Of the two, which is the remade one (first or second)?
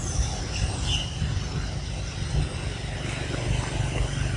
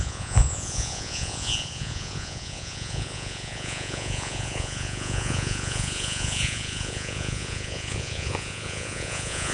second